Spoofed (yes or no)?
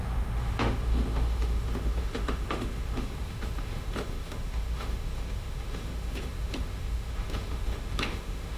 yes